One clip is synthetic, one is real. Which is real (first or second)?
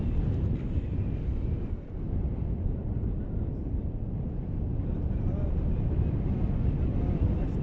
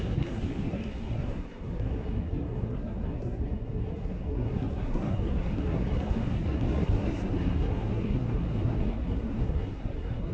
first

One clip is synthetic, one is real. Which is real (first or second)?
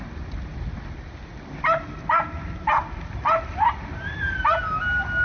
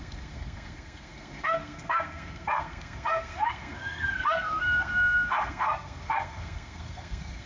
first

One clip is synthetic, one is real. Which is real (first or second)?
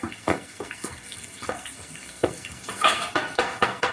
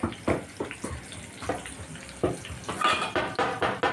second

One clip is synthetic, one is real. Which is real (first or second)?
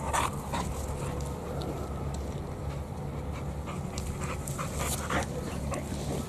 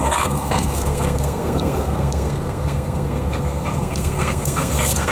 first